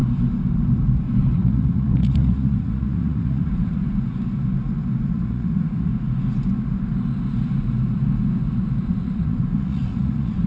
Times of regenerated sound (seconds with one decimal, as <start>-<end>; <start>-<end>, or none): 1.3-3.8; 5.1-5.9; 8.8-10.5